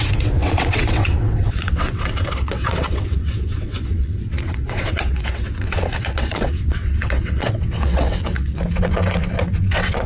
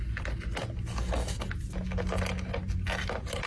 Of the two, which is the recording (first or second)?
second